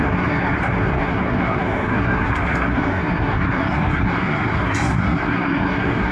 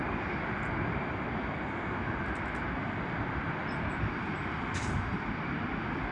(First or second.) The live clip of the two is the second